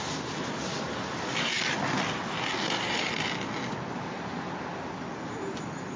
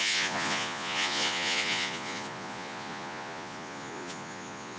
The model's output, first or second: second